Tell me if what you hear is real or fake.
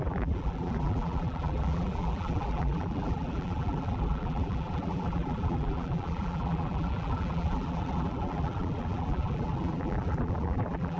fake